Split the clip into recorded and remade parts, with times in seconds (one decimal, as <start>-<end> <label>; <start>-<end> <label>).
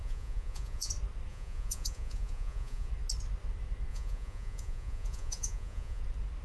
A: 0.0-0.9 remade; 0.9-1.3 recorded; 1.3-2.9 remade; 2.9-3.9 recorded; 3.9-6.0 remade; 6.0-6.4 recorded